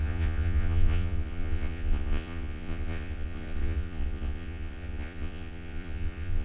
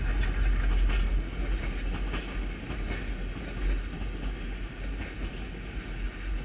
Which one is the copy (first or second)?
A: first